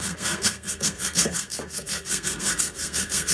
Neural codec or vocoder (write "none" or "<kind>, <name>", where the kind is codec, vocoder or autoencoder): codec, SNAC